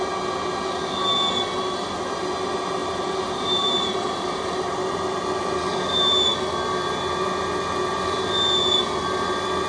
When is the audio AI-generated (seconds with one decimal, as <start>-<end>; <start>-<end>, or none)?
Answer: 2.8-4.9